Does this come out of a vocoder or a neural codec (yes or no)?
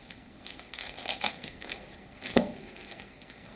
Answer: yes